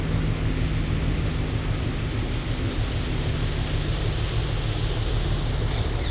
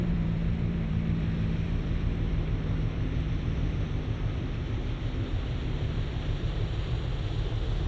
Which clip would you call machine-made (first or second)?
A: second